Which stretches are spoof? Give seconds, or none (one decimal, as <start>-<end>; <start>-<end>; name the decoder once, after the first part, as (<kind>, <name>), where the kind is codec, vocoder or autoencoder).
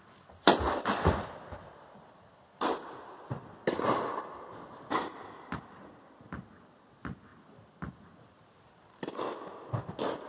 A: none